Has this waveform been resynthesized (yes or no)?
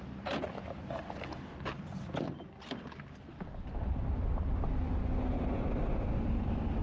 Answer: no